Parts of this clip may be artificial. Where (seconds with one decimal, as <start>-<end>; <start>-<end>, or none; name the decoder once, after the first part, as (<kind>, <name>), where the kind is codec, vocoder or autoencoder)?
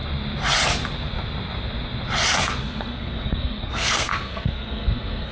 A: 2.6-5.3 (codec, SNAC)